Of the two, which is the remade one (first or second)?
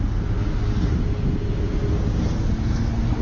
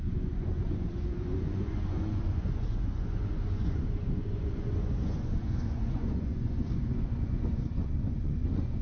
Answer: second